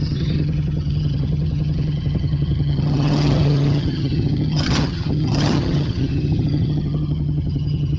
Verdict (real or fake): fake